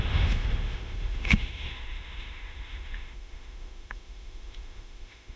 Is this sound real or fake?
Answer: fake